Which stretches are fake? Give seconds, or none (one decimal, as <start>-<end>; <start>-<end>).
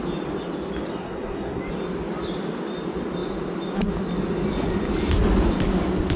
0.9-1.6